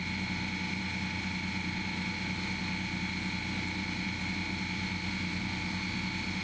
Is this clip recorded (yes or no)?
yes